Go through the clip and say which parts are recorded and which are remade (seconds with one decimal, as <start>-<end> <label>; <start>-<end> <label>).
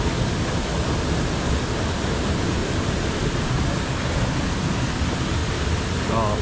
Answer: 0.0-6.4 recorded